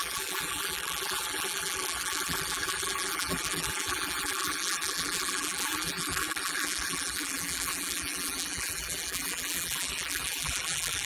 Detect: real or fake fake